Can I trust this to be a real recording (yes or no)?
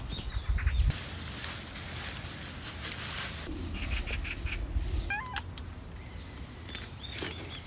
yes